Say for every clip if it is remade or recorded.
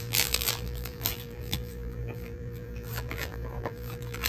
remade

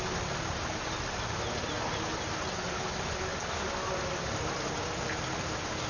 recorded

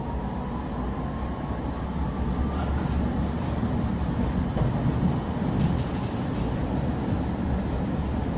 recorded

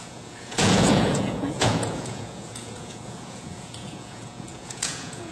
remade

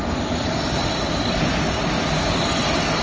recorded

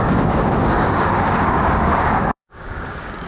remade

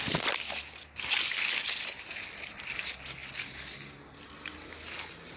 recorded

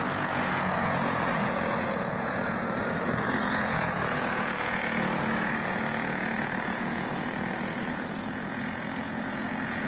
remade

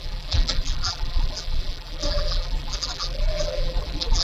remade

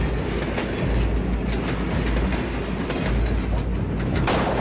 recorded